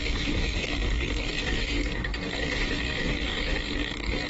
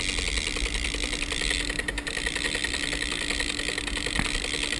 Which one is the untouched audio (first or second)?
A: second